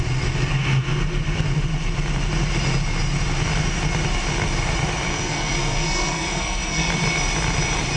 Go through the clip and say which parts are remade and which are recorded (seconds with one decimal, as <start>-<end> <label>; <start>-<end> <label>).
0.0-5.1 recorded; 5.1-6.9 remade; 6.9-8.0 recorded